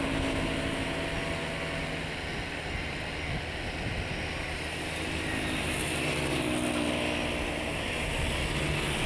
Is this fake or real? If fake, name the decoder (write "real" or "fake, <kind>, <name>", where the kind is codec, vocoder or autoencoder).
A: real